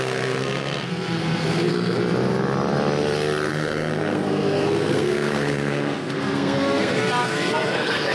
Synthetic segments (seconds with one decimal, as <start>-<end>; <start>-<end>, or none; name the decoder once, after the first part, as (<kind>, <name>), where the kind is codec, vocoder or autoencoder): 0.0-2.0 (codec, SNAC); 3.5-8.1